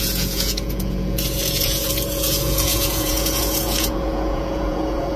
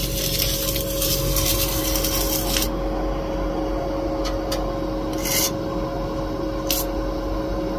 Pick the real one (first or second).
second